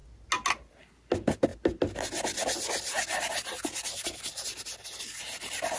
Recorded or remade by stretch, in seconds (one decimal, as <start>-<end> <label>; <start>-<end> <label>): 0.0-5.8 recorded